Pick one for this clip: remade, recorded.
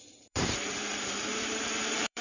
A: remade